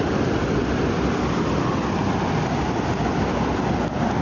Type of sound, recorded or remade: recorded